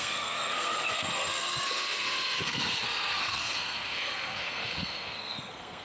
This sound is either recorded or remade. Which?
remade